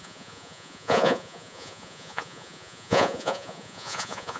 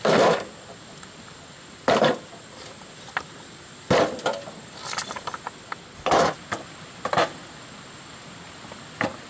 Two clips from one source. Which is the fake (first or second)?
first